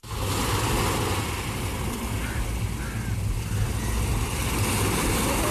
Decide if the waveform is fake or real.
real